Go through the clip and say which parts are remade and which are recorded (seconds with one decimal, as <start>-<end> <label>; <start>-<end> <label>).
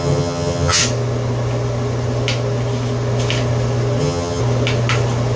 0.0-0.8 remade; 0.8-4.0 recorded; 4.0-4.4 remade; 4.4-5.4 recorded